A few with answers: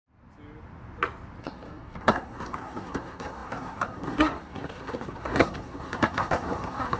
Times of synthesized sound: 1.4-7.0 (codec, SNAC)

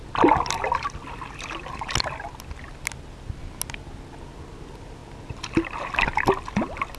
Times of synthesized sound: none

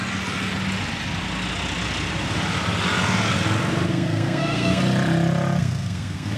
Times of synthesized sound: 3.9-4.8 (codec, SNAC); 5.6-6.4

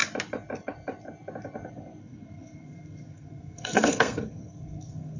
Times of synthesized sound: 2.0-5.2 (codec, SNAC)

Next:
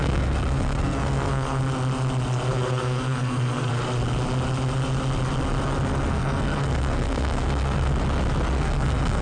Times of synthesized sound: 0.0-1.6 (codec, SNAC); 2.5-3.7; 6.1-7.9; 8.6-9.2

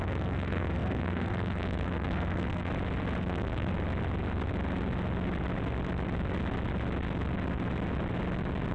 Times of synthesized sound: 0.0-2.7 (codec, SNAC); 3.2-3.7